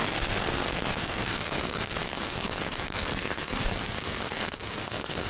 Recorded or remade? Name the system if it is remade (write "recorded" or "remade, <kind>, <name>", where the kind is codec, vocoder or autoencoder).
remade, codec, SNAC